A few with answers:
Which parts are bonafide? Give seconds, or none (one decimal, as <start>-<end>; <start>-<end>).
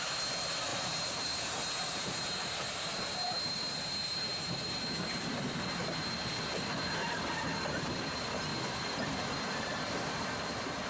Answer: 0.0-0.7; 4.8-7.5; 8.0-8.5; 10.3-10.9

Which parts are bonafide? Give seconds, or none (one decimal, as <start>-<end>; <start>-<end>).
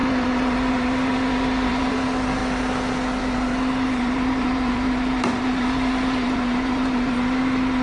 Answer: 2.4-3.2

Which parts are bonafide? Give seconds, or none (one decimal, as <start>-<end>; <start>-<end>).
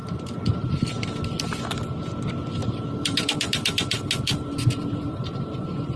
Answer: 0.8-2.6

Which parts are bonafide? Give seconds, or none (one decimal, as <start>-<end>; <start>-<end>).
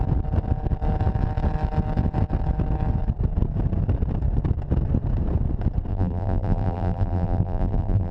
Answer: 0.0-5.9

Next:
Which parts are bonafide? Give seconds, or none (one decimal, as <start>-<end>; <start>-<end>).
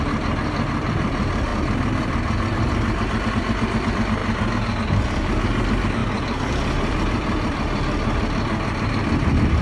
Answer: 1.5-3.3; 4.2-4.8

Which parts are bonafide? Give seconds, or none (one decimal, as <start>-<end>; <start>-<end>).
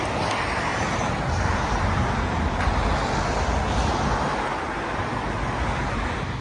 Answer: 0.0-0.7; 2.9-6.4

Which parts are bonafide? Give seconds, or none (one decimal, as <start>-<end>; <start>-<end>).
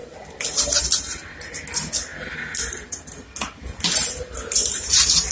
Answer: 0.0-4.6